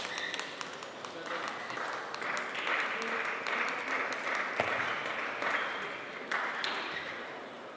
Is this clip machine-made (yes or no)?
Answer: no